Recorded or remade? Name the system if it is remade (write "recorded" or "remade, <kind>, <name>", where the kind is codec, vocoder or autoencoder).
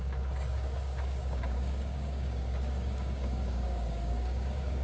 remade, codec, DAC